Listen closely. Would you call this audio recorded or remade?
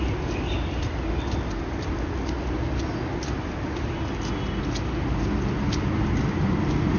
recorded